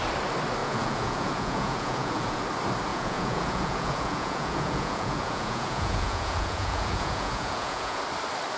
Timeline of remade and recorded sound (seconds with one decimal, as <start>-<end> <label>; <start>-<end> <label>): 0.0-0.6 recorded; 0.6-2.4 remade; 2.4-2.9 recorded; 2.9-8.0 remade; 8.0-8.6 recorded